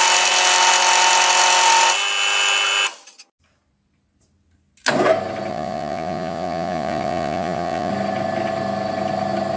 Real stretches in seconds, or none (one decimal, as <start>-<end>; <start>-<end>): 0.0-5.5; 7.9-9.6